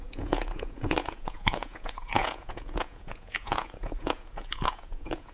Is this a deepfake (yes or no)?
yes